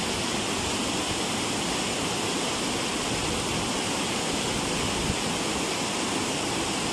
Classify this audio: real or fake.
real